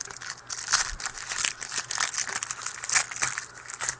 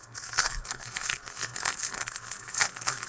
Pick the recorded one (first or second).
first